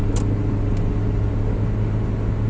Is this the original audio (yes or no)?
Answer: yes